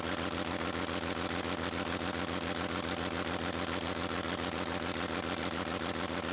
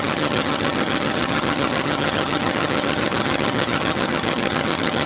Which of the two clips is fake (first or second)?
second